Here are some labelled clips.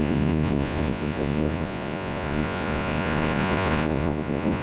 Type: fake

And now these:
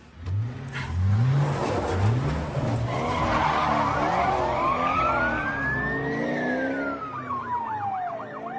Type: real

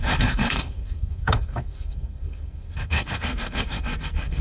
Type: fake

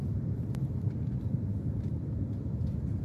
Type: fake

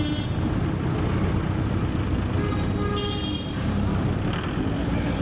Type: real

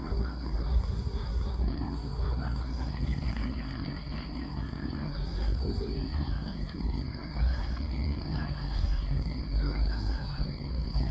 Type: fake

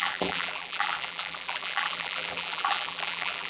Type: fake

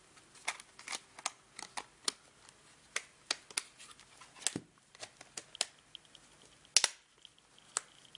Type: real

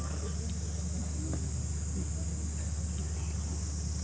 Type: real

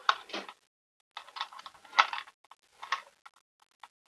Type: real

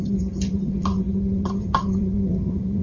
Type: fake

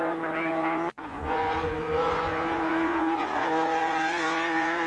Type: fake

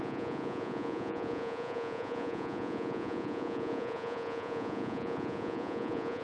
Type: fake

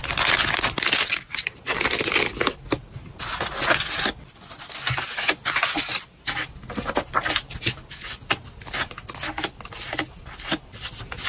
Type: real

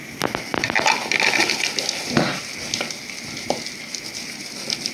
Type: real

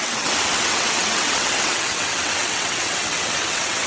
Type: fake